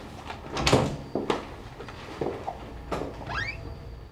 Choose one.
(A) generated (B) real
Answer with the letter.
B